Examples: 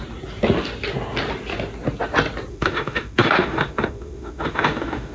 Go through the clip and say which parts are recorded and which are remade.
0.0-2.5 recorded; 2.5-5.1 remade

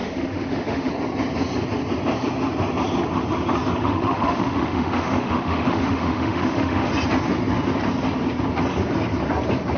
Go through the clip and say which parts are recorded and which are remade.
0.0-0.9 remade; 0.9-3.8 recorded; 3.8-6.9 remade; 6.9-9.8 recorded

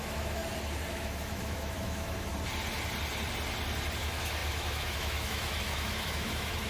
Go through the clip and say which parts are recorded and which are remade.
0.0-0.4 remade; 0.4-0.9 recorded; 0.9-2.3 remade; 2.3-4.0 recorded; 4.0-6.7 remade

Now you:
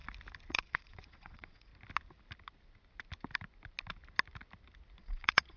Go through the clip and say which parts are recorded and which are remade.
0.0-0.5 recorded; 0.5-1.7 remade; 1.7-5.0 recorded; 5.0-5.6 remade

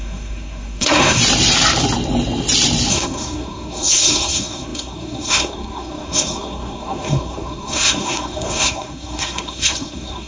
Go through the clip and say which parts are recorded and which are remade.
0.0-1.2 remade; 1.2-2.9 recorded; 2.9-10.3 remade

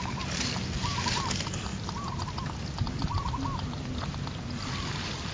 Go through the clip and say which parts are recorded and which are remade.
0.0-5.3 recorded

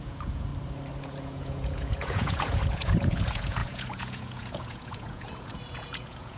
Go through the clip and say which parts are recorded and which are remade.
0.0-0.5 remade; 0.5-1.0 recorded; 1.0-6.4 remade